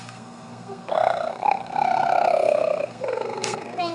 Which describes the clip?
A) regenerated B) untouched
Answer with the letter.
A